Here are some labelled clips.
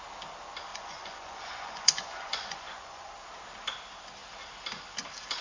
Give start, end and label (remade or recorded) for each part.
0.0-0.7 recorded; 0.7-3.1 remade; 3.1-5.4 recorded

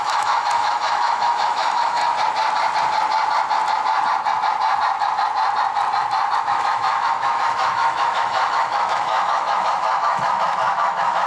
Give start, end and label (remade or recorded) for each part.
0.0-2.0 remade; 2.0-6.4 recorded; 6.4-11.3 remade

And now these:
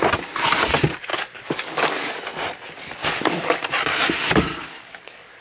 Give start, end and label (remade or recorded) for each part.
0.0-1.1 recorded; 1.1-2.2 remade; 2.2-3.0 recorded; 3.0-3.6 remade; 3.6-4.5 recorded; 4.5-5.4 remade

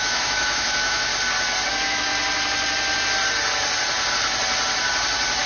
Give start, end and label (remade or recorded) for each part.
0.0-1.1 remade; 1.1-1.7 recorded; 1.7-2.1 remade; 2.1-5.5 recorded

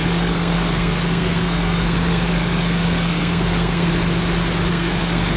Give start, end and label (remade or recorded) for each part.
0.0-3.9 remade; 3.9-4.7 recorded; 4.7-5.4 remade